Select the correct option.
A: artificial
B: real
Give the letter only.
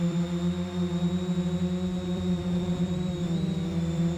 A